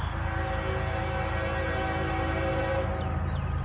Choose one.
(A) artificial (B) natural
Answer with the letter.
B